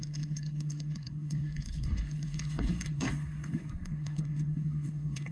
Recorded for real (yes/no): no